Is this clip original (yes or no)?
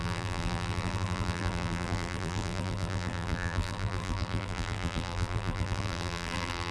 no